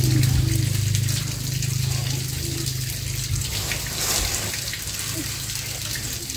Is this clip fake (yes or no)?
no